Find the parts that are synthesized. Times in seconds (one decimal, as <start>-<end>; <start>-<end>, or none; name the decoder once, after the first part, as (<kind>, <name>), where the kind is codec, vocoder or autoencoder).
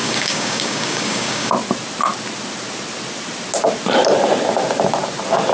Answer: 0.0-1.5 (codec, DAC)